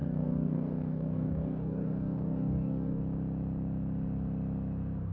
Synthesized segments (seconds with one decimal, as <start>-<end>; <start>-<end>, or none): 0.0-3.0

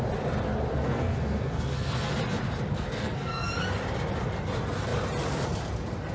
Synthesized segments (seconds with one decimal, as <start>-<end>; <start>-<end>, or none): 0.7-2.1; 2.7-3.5

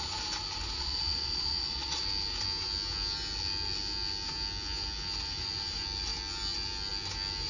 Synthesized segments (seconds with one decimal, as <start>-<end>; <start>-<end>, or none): 0.8-2.0

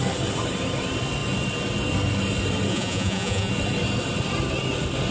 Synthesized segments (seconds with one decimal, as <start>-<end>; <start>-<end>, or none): 2.7-3.5

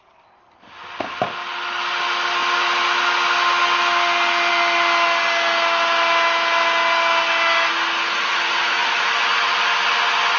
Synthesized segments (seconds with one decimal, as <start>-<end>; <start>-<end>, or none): none

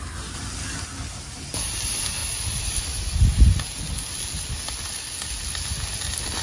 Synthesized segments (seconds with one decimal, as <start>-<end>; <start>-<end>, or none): none